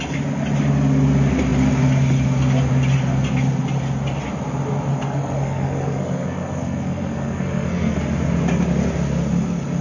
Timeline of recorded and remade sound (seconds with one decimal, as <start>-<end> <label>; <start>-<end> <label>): 0.0-4.9 recorded; 4.9-8.0 remade; 8.0-9.8 recorded